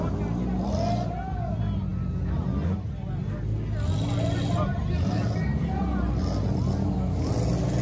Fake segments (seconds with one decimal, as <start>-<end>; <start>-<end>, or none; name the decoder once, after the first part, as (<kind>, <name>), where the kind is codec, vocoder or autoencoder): 6.8-7.3 (autoencoder, DAC-VAE)